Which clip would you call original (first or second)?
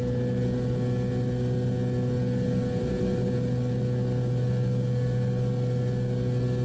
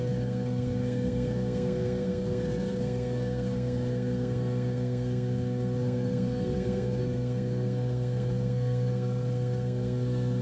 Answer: first